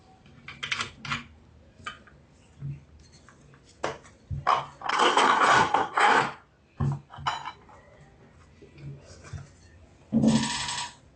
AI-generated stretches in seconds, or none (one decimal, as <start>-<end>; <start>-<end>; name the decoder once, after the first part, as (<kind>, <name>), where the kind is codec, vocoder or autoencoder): 4.9-6.2 (codec, SNAC)